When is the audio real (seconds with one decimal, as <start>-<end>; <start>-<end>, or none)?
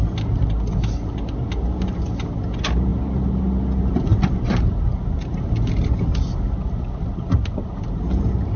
0.0-8.6